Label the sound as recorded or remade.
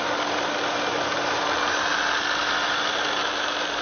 recorded